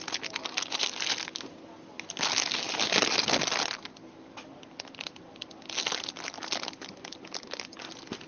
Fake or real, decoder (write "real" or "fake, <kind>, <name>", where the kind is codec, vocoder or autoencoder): real